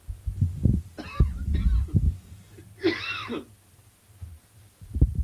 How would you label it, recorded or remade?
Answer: recorded